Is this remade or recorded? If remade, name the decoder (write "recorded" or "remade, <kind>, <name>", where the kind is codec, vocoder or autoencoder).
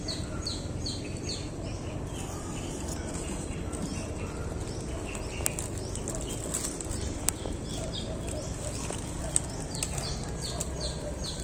recorded